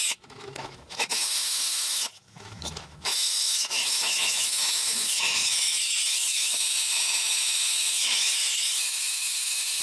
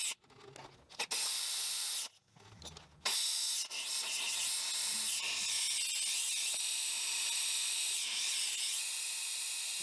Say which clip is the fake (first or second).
first